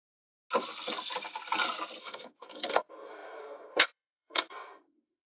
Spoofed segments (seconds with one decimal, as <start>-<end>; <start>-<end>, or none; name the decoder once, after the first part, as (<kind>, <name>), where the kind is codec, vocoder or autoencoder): 2.0-5.3 (codec, SNAC)